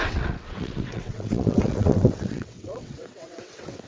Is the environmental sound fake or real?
fake